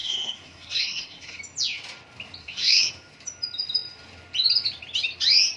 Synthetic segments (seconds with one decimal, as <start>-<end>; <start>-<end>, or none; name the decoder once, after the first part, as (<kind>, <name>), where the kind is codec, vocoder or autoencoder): 0.0-1.4 (codec, SNAC); 2.4-2.9